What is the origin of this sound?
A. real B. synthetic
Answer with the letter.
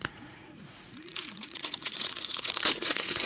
B